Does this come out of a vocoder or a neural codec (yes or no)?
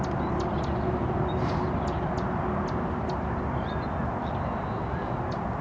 no